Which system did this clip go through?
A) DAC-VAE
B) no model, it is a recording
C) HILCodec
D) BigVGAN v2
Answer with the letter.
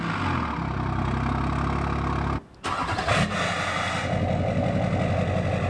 B